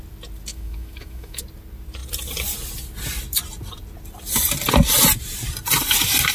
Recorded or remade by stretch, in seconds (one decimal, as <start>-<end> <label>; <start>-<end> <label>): 0.0-0.5 recorded; 0.5-1.4 remade; 1.4-6.3 recorded